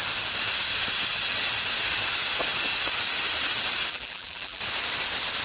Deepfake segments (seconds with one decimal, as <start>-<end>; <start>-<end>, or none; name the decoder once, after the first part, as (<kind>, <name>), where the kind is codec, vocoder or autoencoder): 3.9-4.6 (vocoder, BigVGAN v2)